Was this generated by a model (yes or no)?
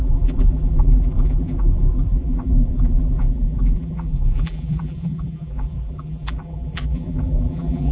yes